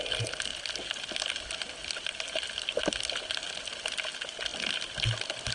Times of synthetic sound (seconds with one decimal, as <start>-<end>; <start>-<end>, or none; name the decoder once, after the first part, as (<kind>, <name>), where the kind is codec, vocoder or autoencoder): none